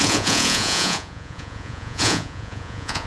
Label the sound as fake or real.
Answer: fake